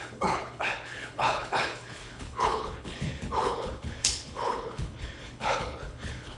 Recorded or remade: remade